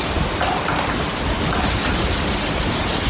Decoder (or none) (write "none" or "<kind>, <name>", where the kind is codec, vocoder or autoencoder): none